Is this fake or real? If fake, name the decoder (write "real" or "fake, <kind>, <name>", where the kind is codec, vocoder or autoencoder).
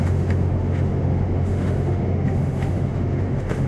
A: fake, autoencoder, DAC-VAE